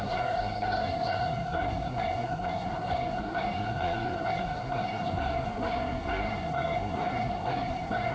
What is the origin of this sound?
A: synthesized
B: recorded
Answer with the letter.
A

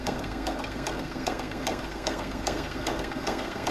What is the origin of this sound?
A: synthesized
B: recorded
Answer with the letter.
A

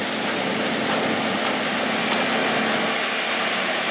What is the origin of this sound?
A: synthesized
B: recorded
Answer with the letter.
B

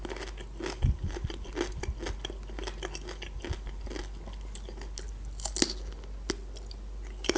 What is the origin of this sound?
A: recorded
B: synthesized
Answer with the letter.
A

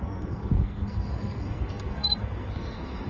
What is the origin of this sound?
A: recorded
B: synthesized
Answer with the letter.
B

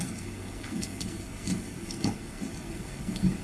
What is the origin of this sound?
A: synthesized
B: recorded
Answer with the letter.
A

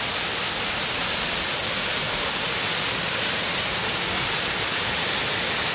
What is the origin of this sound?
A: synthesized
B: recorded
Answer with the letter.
B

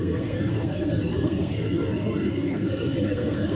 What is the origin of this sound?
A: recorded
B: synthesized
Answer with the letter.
B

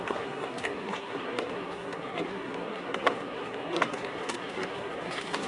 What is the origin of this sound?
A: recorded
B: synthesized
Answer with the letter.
B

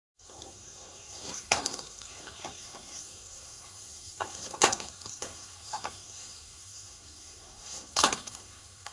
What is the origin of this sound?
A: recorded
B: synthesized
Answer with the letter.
B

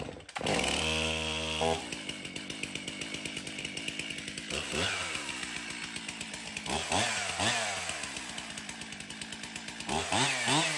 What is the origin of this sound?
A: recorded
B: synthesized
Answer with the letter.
A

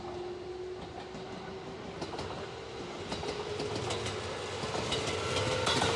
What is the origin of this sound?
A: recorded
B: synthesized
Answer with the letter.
A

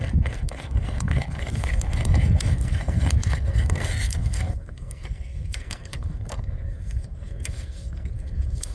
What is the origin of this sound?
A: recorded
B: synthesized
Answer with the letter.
B